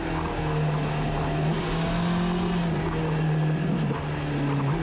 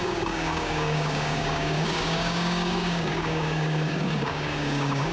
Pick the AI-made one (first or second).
second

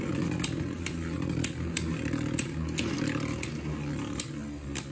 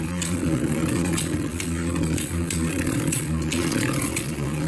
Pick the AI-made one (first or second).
second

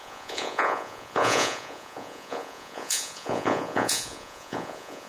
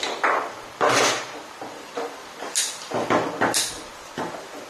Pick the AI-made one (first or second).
first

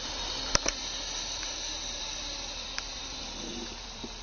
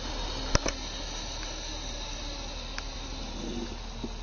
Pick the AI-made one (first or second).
first